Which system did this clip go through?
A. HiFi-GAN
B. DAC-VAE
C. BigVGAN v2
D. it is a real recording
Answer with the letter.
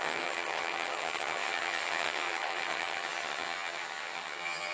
A